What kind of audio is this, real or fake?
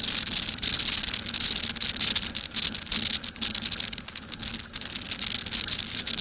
real